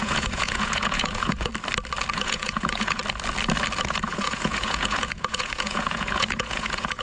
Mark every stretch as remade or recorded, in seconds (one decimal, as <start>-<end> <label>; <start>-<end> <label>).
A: 0.0-1.5 remade; 1.5-2.1 recorded; 2.1-3.0 remade; 3.0-3.9 recorded; 3.9-7.0 remade